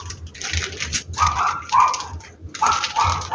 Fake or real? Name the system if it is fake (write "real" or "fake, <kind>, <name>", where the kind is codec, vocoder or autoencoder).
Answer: real